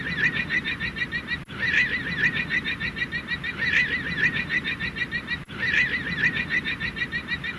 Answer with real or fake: real